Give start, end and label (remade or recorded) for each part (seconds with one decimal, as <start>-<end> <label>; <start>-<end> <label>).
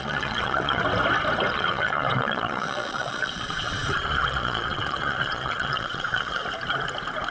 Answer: 0.0-0.8 remade; 0.8-1.5 recorded; 1.5-6.4 remade; 6.4-7.3 recorded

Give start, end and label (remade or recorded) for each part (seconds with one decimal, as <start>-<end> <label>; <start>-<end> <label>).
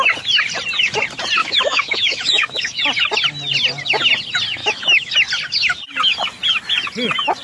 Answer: 0.0-1.4 recorded; 1.4-2.8 remade; 2.8-4.6 recorded; 4.6-5.1 remade; 5.1-7.4 recorded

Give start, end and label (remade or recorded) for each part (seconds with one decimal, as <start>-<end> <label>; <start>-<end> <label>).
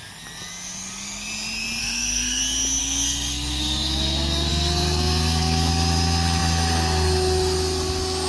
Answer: 0.0-1.8 recorded; 1.8-2.4 remade; 2.4-2.8 recorded; 2.8-5.7 remade; 5.7-8.3 recorded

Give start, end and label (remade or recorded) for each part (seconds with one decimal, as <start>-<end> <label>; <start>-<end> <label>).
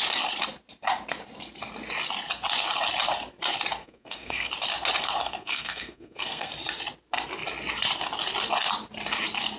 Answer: 0.0-3.8 recorded; 3.8-4.5 remade; 4.5-5.2 recorded; 5.2-6.5 remade; 6.5-9.6 recorded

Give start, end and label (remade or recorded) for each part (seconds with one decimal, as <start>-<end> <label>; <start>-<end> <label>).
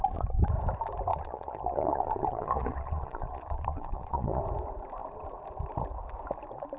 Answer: 0.0-1.1 recorded; 1.1-4.4 remade; 4.4-6.8 recorded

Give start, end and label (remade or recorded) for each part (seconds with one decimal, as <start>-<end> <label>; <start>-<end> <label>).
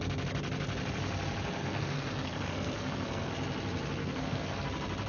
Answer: 0.0-1.6 recorded; 1.6-3.3 remade; 3.3-4.0 recorded; 4.0-4.6 remade; 4.6-5.1 recorded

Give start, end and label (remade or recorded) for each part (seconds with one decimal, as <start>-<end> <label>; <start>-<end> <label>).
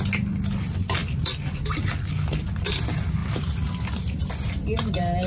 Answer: 0.0-5.3 recorded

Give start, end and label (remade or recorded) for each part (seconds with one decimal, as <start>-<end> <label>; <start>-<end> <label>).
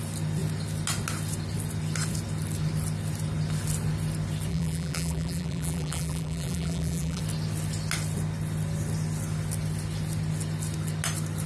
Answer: 0.0-4.5 recorded; 4.5-7.2 remade; 7.2-11.5 recorded